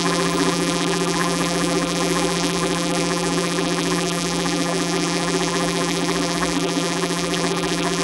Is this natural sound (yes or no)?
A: no